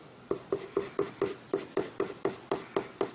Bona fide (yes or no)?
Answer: yes